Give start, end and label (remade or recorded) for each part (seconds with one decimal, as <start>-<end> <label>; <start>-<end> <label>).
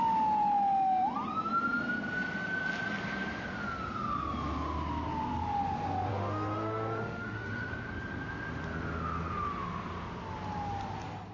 0.0-6.1 recorded; 6.1-7.7 remade; 7.7-11.3 recorded